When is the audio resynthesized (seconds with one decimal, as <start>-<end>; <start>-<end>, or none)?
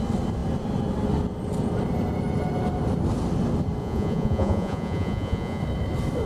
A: 3.8-5.6